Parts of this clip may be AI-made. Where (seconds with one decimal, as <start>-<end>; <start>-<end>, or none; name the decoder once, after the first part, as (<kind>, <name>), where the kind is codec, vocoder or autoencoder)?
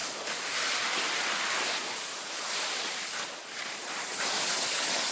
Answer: none